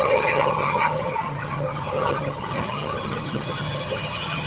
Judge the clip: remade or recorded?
remade